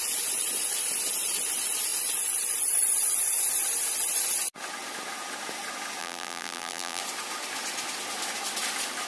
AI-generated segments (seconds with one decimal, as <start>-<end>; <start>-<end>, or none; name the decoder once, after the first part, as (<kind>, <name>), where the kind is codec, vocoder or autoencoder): 6.0-7.0 (vocoder, BigVGAN v2)